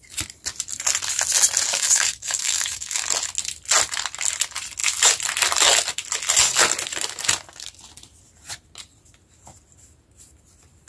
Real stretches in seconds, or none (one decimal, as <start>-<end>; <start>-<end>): 0.0-1.7; 3.0-10.9